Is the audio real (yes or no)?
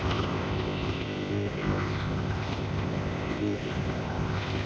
no